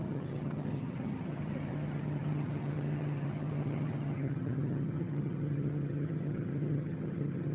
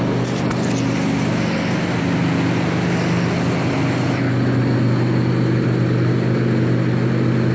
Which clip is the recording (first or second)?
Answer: second